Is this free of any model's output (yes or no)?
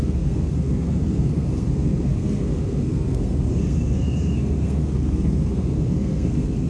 no